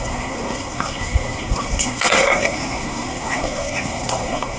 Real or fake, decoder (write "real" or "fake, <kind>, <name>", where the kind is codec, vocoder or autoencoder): fake, codec, SNAC